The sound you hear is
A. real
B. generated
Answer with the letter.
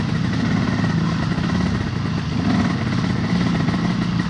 A